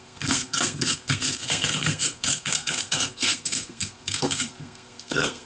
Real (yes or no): no